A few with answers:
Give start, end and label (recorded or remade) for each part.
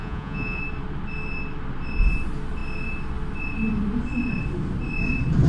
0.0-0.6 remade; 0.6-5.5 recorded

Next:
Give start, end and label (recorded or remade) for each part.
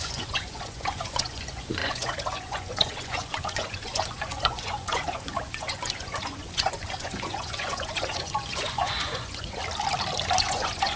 0.0-9.6 remade; 9.6-10.4 recorded; 10.4-11.0 remade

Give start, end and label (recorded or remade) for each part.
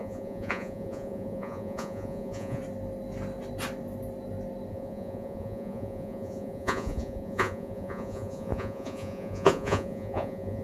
0.0-2.6 remade; 2.6-4.7 recorded; 4.7-10.6 remade